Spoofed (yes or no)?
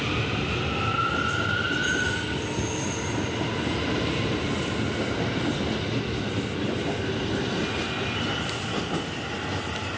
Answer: no